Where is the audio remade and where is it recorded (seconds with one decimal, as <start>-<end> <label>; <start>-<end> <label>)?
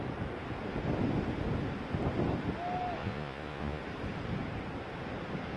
0.0-3.0 recorded; 3.0-3.8 remade; 3.8-5.6 recorded